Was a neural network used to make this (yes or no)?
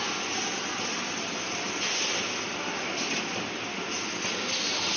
no